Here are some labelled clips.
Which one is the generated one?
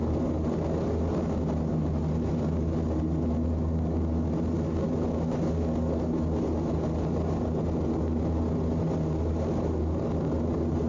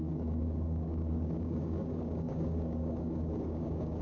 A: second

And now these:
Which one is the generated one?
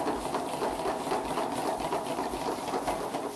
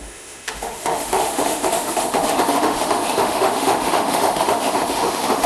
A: second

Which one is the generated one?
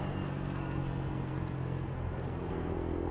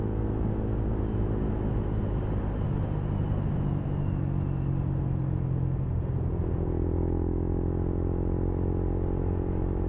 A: first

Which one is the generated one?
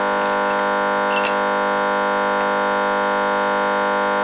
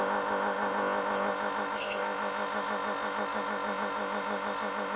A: second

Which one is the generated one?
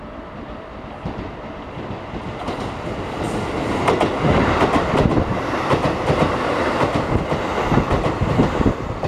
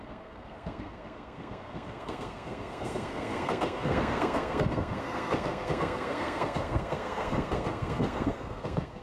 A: second